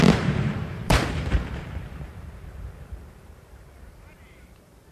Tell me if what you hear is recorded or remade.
remade